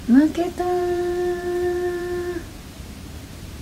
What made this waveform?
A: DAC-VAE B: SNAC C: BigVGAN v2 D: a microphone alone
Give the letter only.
C